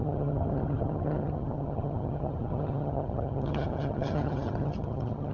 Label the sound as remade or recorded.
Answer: remade